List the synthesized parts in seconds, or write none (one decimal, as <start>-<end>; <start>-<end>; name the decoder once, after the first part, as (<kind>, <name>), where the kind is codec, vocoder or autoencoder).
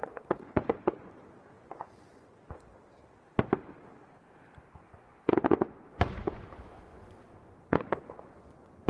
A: 0.0-2.7 (vocoder, Vocos); 4.7-8.9